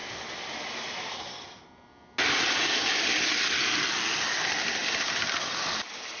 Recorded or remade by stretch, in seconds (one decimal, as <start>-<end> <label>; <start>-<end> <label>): 0.0-6.2 recorded